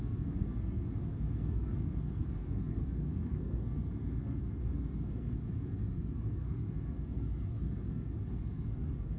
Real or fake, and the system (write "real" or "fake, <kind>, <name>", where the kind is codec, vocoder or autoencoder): fake, codec, SNAC